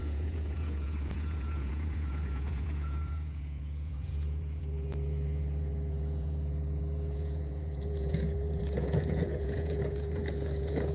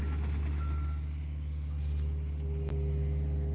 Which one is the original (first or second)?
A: second